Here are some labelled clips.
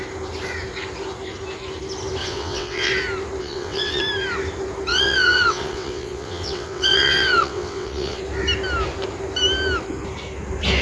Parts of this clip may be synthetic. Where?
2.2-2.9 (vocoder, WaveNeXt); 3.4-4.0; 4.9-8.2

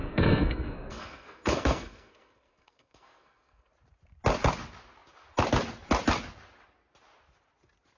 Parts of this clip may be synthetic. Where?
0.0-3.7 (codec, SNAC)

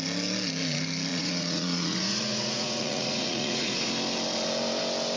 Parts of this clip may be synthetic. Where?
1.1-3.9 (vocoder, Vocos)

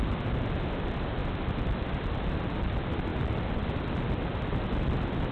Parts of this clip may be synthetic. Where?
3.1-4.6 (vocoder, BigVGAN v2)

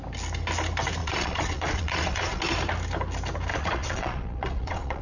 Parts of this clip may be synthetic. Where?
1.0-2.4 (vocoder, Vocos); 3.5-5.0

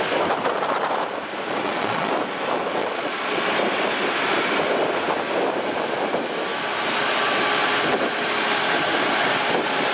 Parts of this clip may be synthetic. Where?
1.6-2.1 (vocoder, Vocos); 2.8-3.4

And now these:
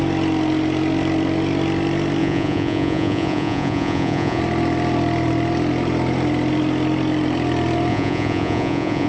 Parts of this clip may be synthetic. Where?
2.2-4.4 (vocoder, Vocos); 7.9-9.1

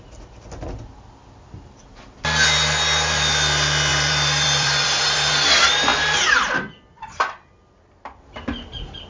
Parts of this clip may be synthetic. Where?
3.9-5.3 (vocoder, BigVGAN v2)